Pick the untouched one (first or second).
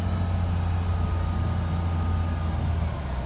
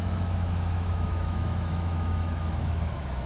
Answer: first